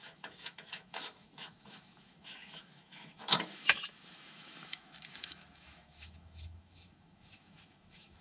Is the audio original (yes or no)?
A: no